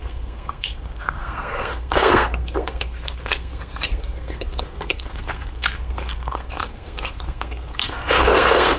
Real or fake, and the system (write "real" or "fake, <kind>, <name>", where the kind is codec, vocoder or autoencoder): fake, codec, SNAC